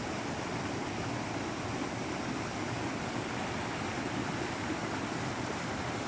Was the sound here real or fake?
real